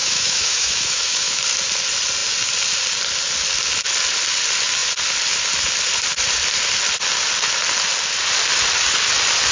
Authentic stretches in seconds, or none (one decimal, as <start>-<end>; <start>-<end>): 1.4-9.5